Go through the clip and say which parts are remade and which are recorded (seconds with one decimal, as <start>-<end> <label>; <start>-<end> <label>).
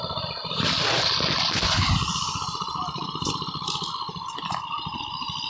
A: 0.0-5.5 recorded